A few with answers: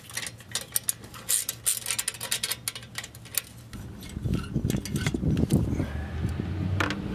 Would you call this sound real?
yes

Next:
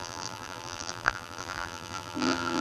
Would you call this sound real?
no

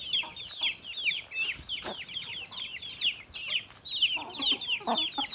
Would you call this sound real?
yes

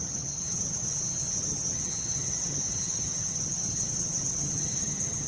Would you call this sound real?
no